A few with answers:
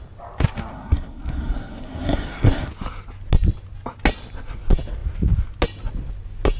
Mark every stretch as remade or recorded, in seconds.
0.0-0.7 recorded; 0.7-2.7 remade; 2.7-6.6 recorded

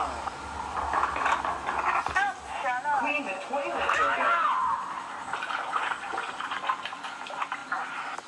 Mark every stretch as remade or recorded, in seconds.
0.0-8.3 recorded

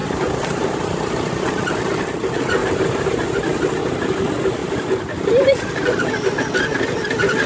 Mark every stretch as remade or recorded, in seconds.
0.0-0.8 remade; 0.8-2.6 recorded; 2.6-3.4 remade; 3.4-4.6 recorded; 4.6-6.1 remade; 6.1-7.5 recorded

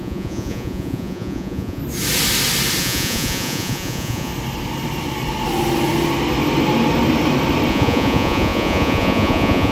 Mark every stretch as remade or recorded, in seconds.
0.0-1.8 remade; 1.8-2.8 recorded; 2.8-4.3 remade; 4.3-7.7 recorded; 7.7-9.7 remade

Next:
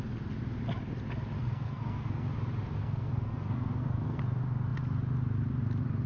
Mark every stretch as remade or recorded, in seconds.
0.0-1.4 recorded; 1.4-2.3 remade; 2.3-2.8 recorded; 2.8-4.2 remade; 4.2-6.1 recorded

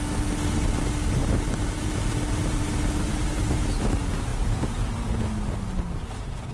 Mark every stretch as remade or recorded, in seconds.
0.0-1.2 recorded; 1.2-2.6 remade; 2.6-4.3 recorded; 4.3-5.2 remade; 5.2-6.5 recorded

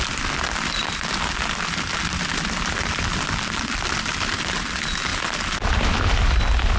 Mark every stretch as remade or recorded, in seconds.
0.0-6.8 recorded